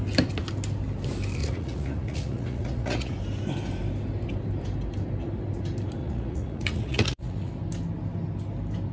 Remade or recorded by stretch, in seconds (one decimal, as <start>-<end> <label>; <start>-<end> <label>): 0.0-1.4 recorded; 1.4-3.1 remade; 3.1-6.0 recorded; 6.0-7.5 remade; 7.5-8.9 recorded